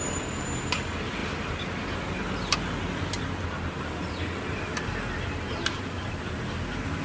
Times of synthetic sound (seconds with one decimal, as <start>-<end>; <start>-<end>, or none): none